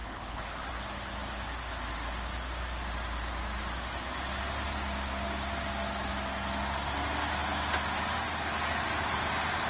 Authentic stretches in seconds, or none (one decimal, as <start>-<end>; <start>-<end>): 0.7-9.7